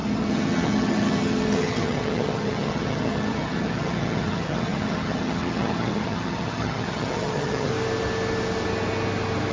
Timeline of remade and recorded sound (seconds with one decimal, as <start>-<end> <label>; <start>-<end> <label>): 0.0-7.7 remade; 7.7-9.5 recorded